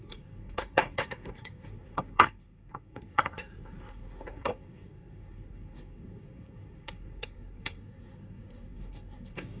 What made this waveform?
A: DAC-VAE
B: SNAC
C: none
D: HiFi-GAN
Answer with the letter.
B